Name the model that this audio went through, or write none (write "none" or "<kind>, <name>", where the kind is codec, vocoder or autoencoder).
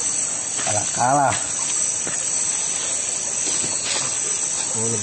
none